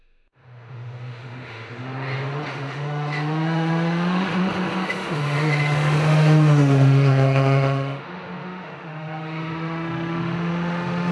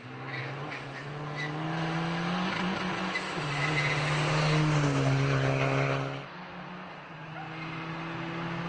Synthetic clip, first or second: first